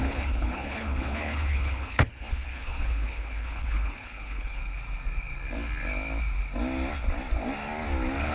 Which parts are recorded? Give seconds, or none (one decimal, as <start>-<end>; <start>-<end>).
4.6-8.3